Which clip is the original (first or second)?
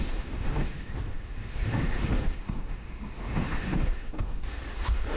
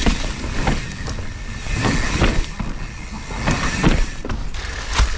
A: second